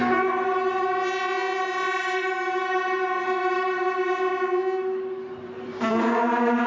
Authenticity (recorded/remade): recorded